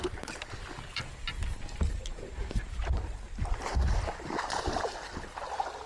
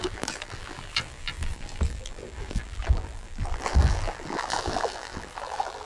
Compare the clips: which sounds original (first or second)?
first